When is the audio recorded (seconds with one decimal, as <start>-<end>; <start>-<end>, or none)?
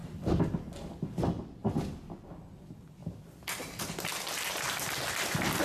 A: 0.0-3.0; 3.8-5.6